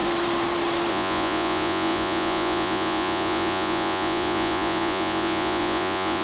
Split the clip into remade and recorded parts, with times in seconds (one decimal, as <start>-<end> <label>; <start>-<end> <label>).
0.0-0.9 recorded; 0.9-6.2 remade